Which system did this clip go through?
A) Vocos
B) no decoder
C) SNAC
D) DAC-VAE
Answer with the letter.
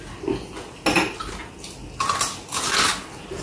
B